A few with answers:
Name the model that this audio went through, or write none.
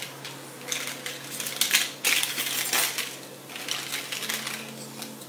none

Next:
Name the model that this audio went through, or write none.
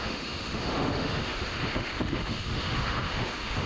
autoencoder, DAC-VAE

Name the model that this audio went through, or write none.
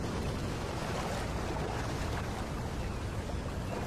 none